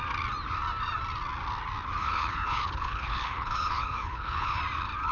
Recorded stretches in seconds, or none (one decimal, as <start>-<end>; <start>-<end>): 0.0-2.0; 4.6-5.1